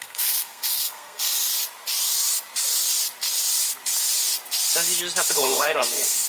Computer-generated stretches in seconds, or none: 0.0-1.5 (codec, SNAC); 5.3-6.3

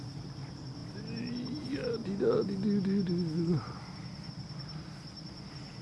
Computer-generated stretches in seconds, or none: none